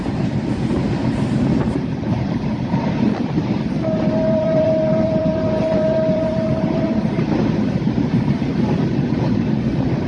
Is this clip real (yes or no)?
no